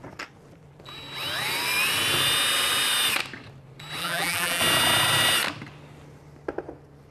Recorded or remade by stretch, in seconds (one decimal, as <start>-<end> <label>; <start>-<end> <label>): 0.0-4.0 recorded; 4.0-4.6 remade; 4.6-7.1 recorded